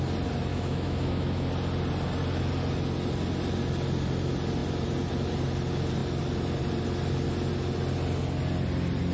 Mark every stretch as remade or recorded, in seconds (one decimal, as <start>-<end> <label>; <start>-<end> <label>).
0.0-0.5 recorded; 0.5-1.5 remade; 1.5-9.1 recorded